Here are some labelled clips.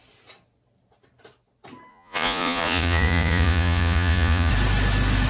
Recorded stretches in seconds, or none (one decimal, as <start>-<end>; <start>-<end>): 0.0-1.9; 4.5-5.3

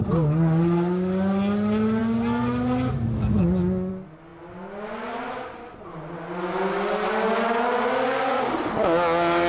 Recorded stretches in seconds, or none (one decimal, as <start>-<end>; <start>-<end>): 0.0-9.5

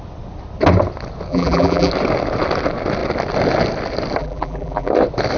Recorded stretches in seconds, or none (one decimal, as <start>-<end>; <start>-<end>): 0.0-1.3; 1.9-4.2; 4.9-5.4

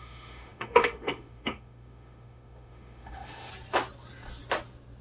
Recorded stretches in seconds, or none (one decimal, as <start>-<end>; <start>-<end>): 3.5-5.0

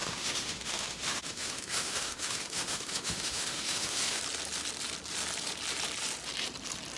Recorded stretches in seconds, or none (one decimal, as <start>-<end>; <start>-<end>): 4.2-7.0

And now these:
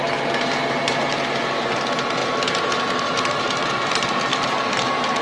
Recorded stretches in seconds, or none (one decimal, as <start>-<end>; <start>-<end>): 0.0-5.2

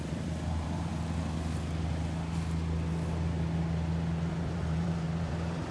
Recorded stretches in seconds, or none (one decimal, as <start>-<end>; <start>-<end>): 0.9-4.3

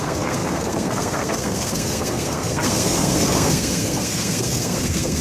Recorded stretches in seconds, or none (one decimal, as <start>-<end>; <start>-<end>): none